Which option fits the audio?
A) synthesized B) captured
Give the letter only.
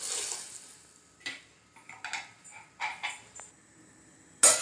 B